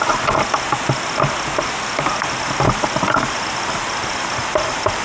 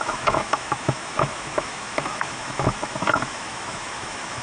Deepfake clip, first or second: second